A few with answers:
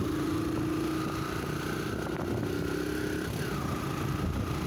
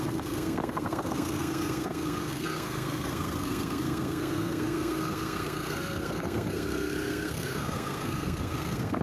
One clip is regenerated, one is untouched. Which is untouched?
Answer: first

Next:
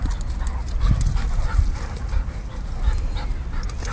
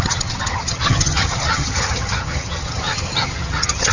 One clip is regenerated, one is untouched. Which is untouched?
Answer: first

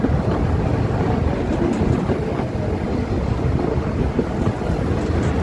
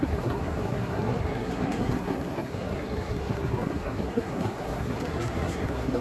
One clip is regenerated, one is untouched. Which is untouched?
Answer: first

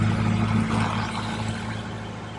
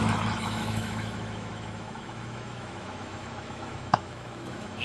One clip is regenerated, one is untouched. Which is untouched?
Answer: first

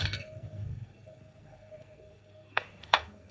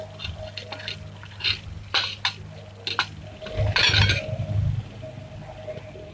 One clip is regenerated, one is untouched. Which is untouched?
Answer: second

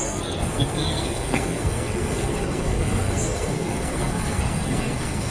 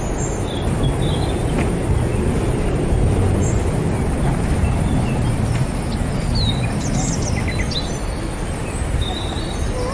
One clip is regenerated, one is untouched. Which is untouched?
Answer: second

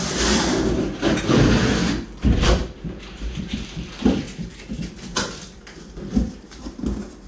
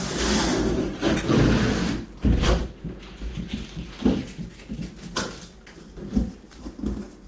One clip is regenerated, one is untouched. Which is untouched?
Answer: second